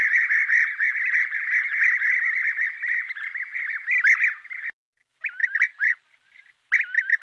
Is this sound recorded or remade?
recorded